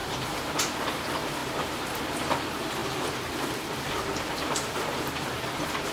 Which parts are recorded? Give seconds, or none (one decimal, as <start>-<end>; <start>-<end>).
0.5-1.4; 2.0-2.8; 5.4-5.9